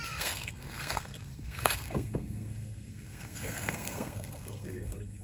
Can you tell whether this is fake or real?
fake